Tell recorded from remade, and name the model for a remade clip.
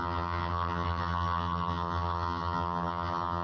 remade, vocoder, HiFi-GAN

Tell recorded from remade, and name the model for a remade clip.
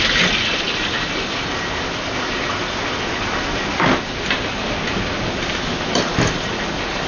recorded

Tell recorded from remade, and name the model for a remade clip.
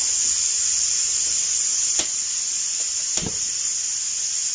recorded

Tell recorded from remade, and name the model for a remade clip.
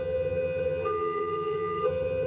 remade, vocoder, HiFi-GAN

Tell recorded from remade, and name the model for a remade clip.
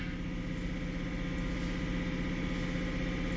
recorded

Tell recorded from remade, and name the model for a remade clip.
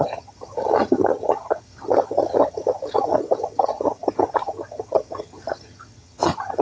remade, vocoder, HiFi-GAN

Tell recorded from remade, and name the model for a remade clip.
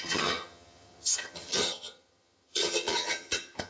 remade, vocoder, HiFi-GAN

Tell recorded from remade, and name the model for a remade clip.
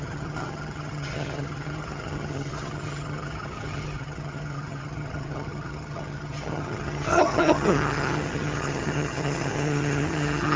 remade, vocoder, HiFi-GAN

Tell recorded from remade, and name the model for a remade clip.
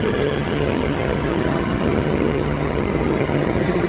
remade, vocoder, HiFi-GAN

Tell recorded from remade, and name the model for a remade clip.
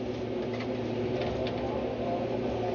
recorded